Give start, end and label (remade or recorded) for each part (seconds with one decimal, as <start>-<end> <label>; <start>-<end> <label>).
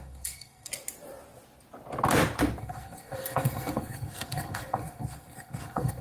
0.0-0.7 remade; 0.7-2.6 recorded; 2.6-6.0 remade